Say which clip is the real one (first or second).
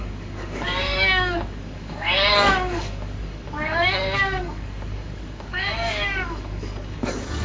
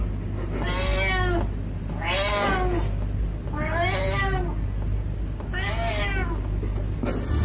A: second